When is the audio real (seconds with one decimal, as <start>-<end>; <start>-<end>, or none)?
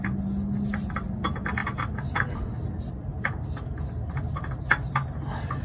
0.0-5.6